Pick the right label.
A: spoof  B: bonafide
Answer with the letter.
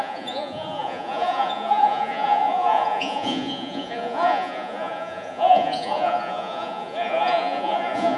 A